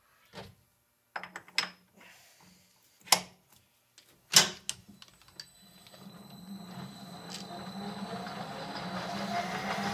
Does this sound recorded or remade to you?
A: recorded